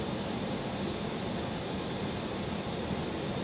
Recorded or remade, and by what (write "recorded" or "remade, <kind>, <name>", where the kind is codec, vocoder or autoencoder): recorded